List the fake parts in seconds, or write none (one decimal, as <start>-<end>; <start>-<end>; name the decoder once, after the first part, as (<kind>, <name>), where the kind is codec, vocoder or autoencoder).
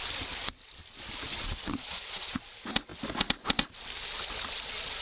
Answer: 1.3-2.4 (vocoder, Vocos)